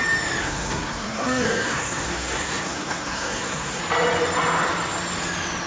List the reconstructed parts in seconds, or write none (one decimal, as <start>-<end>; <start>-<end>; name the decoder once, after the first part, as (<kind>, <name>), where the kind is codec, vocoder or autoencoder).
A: 0.4-3.8 (codec, SNAC)